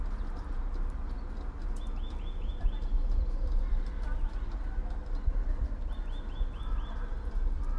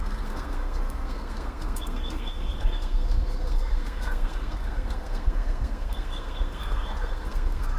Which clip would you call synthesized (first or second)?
second